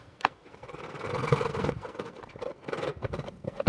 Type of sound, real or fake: fake